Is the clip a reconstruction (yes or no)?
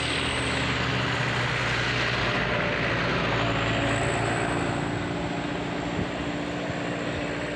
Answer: no